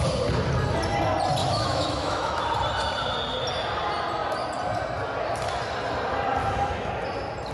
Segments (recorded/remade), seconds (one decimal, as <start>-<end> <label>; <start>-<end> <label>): 0.0-1.4 recorded; 1.4-2.4 remade; 2.4-6.4 recorded; 6.4-6.9 remade; 6.9-7.5 recorded